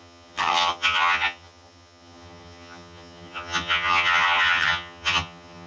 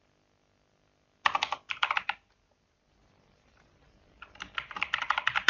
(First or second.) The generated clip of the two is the first